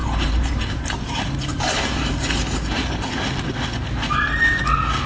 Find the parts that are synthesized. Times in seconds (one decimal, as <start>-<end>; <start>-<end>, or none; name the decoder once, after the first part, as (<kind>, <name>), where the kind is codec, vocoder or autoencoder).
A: 0.0-3.1 (vocoder, BigVGAN v2)